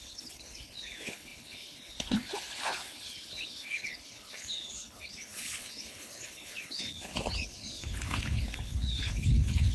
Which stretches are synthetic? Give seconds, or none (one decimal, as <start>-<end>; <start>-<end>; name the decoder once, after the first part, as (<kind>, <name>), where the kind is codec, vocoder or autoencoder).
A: 0.0-9.7 (codec, HILCodec)